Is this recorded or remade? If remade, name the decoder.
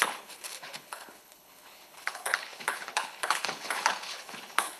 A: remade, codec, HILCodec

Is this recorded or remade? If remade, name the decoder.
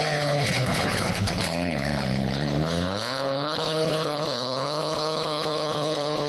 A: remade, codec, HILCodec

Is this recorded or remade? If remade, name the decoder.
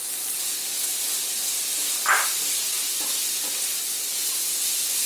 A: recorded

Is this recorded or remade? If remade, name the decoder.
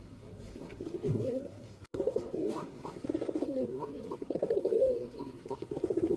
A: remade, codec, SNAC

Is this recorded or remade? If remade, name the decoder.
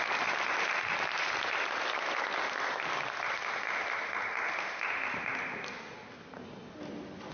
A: recorded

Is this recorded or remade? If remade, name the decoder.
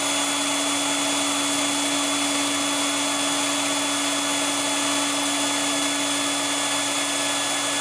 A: recorded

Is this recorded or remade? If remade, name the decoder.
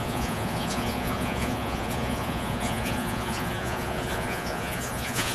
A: remade, vocoder, Vocos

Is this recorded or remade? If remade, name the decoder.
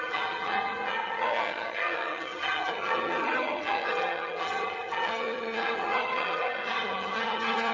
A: remade, vocoder, HiFi-GAN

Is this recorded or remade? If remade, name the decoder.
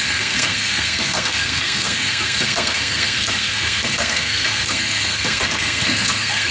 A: remade, codec, SNAC